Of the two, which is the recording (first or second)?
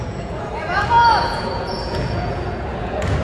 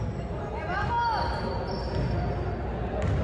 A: second